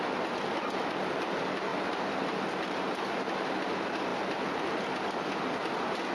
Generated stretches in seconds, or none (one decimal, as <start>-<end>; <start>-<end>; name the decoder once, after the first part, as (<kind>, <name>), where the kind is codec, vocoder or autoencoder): 1.7-3.2 (vocoder, BigVGAN v2); 4.1-4.7